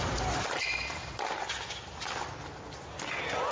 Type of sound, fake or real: real